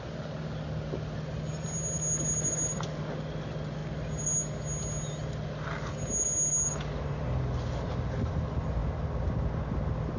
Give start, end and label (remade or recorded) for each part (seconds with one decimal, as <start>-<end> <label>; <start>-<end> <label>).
0.0-10.2 recorded